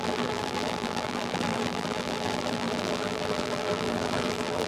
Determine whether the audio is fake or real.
fake